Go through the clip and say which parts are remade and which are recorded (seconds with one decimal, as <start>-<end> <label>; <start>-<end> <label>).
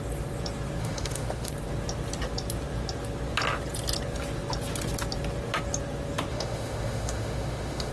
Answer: 0.0-0.8 recorded; 0.8-1.5 remade; 1.5-6.3 recorded; 6.3-7.9 remade